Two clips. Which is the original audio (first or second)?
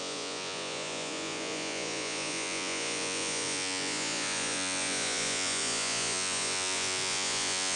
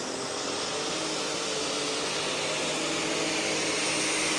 second